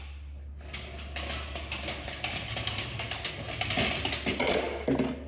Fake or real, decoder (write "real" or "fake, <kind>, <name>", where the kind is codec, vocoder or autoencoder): real